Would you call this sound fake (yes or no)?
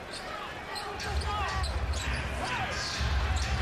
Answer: no